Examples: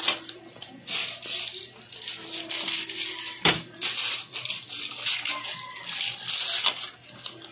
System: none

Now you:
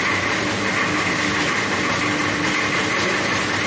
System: none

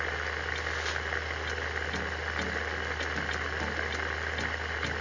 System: none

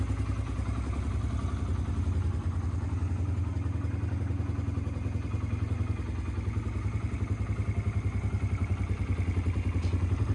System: none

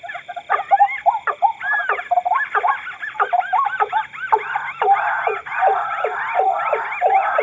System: none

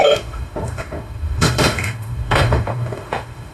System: autoencoder, DAC-VAE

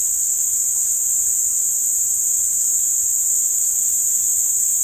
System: none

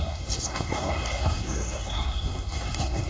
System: codec, SNAC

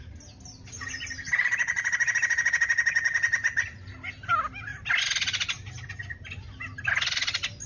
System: none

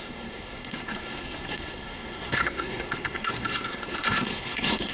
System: codec, SNAC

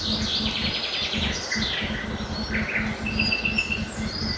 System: none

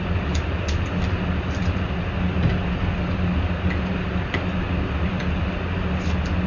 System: none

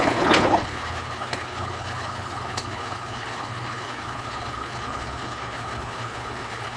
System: codec, HILCodec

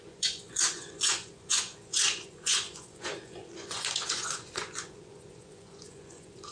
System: vocoder, Vocos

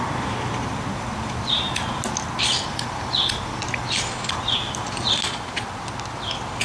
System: none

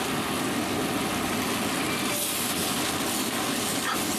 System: none